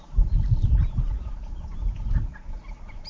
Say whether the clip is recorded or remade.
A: recorded